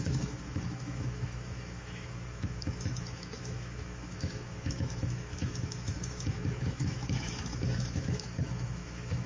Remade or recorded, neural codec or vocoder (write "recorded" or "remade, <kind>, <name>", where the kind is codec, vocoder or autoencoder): remade, autoencoder, DAC-VAE